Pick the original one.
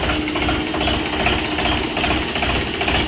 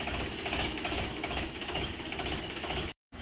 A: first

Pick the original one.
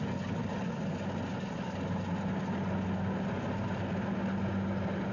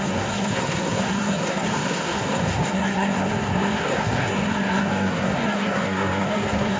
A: first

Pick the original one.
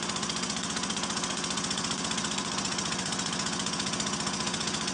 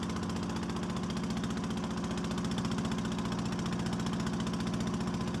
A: second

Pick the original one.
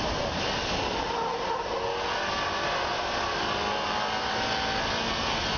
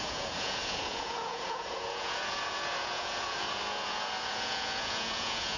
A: first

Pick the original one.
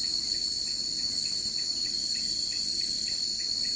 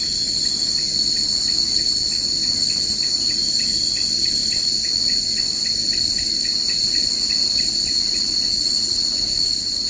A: second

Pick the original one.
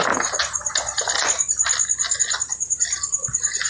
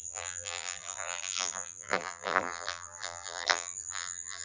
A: first